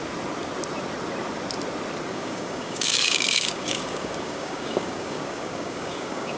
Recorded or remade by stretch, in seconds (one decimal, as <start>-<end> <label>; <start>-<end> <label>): 0.0-2.1 recorded; 2.1-6.4 remade